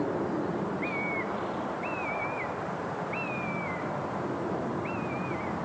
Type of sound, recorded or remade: recorded